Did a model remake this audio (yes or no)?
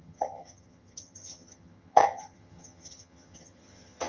yes